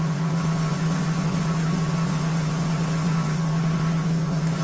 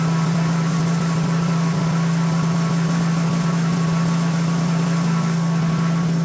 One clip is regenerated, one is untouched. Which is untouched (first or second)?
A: second